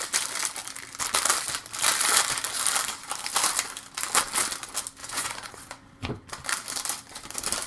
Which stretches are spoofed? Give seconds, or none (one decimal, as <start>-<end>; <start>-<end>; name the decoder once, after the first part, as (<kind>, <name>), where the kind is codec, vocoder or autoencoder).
5.0-6.1 (vocoder, Vocos)